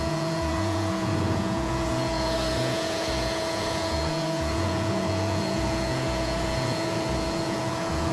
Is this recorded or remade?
remade